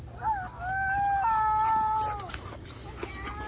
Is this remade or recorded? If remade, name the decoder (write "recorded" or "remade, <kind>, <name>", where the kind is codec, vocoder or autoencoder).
recorded